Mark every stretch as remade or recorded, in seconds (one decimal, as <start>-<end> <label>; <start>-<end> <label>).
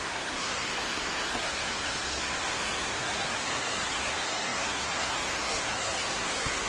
0.0-6.7 remade